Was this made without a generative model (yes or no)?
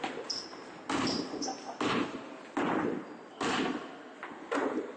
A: yes